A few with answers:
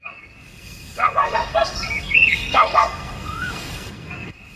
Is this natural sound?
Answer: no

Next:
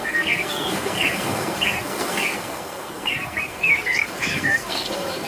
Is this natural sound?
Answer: no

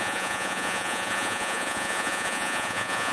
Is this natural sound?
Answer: no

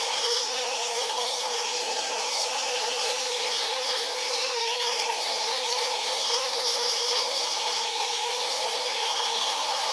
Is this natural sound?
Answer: no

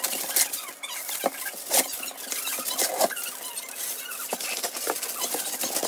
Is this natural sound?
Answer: yes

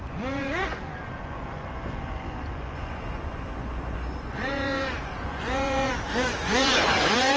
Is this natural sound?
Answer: no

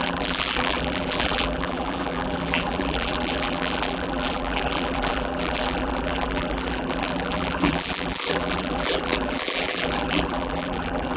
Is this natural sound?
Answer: no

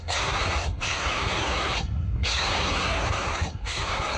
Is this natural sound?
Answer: no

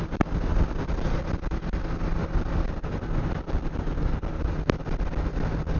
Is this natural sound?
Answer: yes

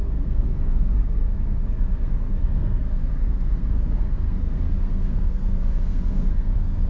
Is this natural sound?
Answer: no